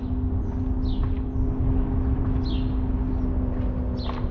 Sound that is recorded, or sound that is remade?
recorded